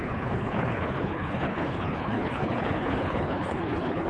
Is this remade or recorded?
remade